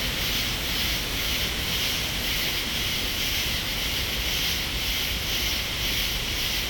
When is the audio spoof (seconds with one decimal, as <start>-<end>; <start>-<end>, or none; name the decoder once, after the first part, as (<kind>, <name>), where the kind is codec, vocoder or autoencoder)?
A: 1.9-5.3 (vocoder, BigVGAN v2)